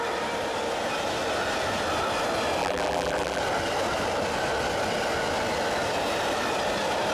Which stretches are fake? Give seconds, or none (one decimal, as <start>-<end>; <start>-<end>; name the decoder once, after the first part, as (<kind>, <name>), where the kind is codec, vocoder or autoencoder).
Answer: 2.6-3.4 (vocoder, BigVGAN v2)